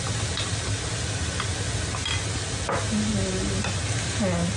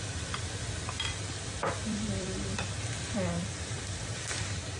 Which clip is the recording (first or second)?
first